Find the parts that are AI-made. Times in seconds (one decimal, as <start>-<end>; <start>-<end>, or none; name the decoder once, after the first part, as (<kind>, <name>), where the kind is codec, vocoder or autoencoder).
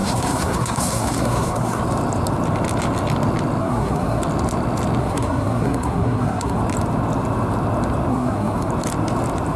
0.0-1.8 (codec, SNAC); 3.6-4.2; 5.0-6.6; 8.1-8.7